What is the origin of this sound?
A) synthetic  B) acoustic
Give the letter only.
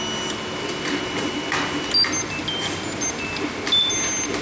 B